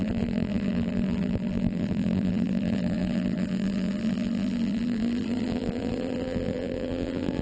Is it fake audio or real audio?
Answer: fake